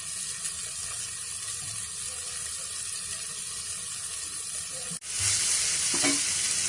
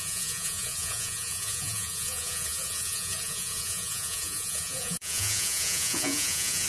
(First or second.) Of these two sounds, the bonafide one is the first